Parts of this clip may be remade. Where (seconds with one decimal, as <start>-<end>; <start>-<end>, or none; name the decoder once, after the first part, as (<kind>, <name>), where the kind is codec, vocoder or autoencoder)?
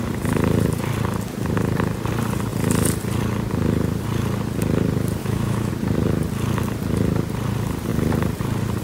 5.2-5.7 (autoencoder, DAC-VAE)